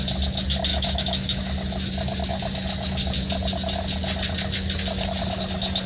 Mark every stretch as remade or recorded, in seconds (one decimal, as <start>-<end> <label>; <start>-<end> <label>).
0.0-0.7 recorded; 0.7-1.4 remade; 1.4-5.9 recorded